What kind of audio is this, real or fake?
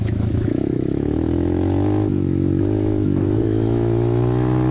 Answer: fake